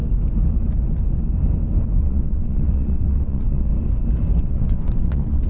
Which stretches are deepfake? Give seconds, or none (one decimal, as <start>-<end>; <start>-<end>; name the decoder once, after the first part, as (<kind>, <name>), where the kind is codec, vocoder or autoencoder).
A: 2.0-3.7 (vocoder, WaveNeXt); 4.4-5.5